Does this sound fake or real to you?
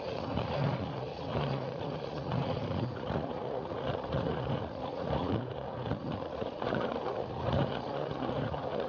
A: fake